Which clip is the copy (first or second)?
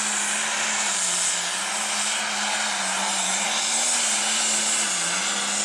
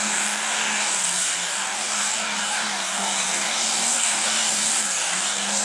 second